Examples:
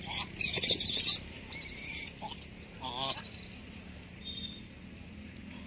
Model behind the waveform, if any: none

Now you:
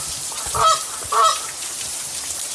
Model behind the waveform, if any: none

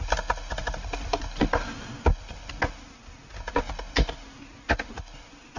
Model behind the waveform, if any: none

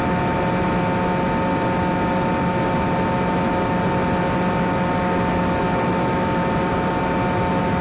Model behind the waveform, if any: none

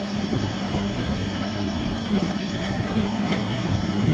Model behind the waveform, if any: codec, SNAC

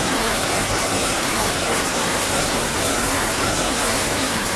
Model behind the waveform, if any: codec, SNAC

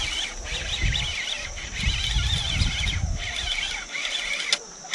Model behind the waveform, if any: none